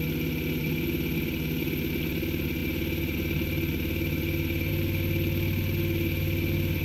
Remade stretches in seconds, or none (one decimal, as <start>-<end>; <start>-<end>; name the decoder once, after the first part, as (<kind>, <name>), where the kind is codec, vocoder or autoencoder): none